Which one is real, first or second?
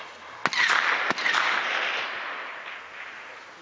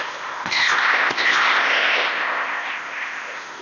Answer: first